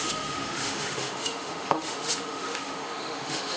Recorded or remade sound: remade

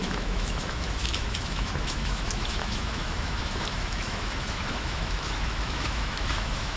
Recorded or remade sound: remade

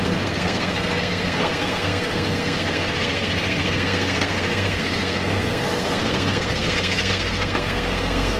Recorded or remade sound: remade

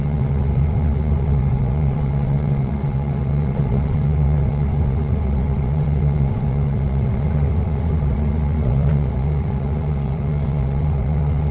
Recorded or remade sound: remade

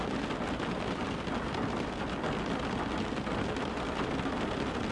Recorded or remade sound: recorded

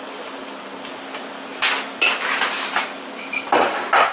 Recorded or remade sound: recorded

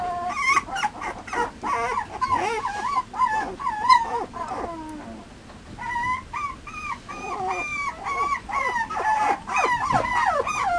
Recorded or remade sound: recorded